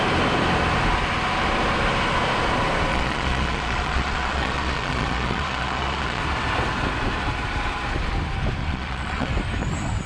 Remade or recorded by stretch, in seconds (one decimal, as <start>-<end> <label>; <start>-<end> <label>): 0.0-2.9 recorded; 2.9-6.2 remade; 6.2-8.6 recorded; 8.6-9.3 remade; 9.3-10.1 recorded